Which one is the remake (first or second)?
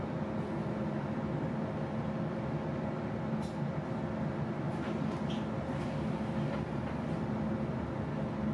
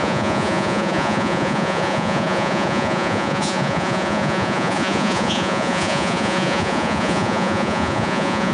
second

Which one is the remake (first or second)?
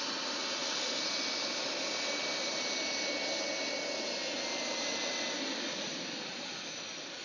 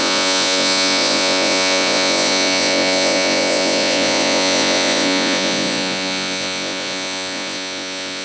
second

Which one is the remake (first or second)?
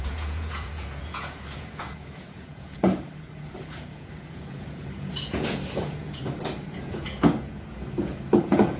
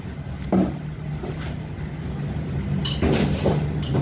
first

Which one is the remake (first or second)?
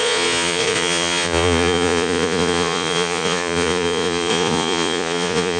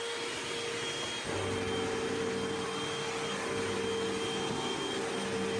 first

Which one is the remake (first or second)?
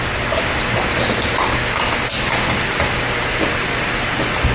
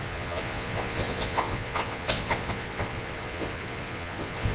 second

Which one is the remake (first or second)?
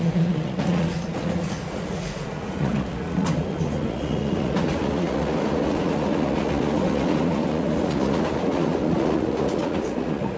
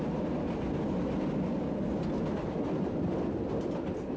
first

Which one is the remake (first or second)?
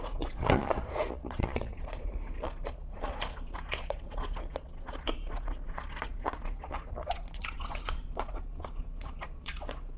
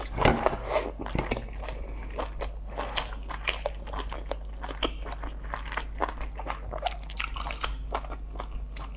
first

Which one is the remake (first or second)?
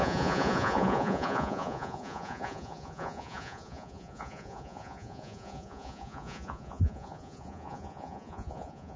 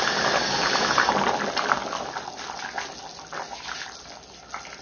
first